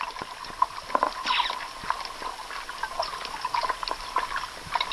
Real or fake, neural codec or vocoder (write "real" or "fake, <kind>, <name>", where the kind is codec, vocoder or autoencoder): real